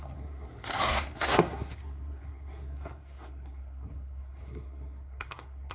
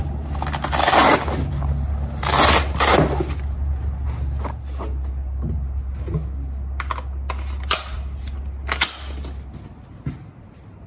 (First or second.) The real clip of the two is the second